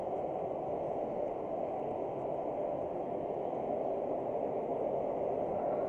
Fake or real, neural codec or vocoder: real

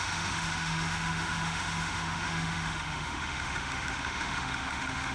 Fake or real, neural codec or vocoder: fake, autoencoder, DAC-VAE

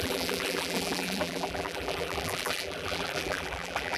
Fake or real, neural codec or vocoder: fake, vocoder, BigVGAN v2